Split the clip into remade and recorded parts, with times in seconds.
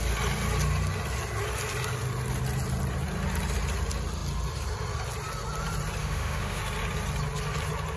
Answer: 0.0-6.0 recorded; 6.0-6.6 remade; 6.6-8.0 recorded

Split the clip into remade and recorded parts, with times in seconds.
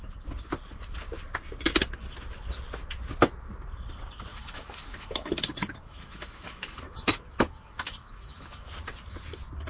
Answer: 0.0-4.3 recorded; 4.3-8.7 remade; 8.7-9.7 recorded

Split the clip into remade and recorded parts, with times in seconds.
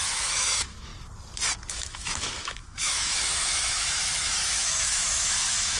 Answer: 0.0-0.9 remade; 0.9-1.7 recorded; 1.7-5.8 remade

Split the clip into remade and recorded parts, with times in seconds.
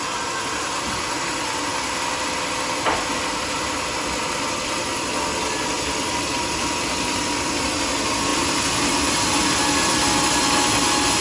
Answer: 0.0-11.2 recorded